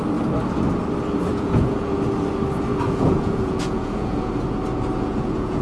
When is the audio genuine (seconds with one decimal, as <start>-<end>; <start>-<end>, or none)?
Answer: 0.0-1.3; 2.0-2.7; 4.3-4.7

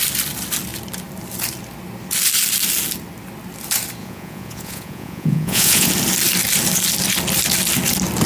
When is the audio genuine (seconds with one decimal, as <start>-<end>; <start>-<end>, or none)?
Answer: 0.0-4.0; 5.9-8.3

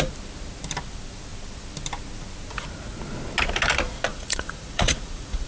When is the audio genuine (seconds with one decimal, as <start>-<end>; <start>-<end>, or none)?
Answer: 0.0-4.1

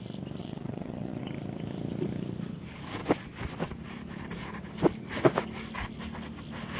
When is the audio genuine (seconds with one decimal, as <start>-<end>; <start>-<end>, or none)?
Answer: 0.0-0.4; 1.2-6.8

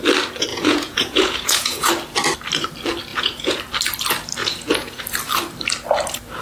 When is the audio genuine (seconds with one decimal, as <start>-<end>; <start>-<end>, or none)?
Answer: 0.0-0.5; 1.9-3.1; 3.6-4.4; 5.0-6.4

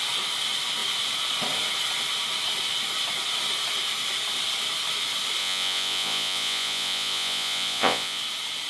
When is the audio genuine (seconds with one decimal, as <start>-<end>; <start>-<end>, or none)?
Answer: 0.0-5.4; 8.2-8.7

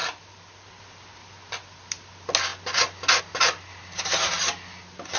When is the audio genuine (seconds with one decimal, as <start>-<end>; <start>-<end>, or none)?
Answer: 0.0-5.2